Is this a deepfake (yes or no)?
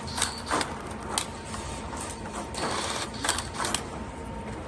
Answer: no